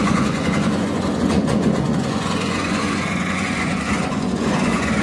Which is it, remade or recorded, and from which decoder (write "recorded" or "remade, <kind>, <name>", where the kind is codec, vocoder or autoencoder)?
remade, vocoder, Vocos